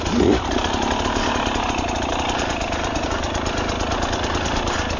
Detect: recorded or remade recorded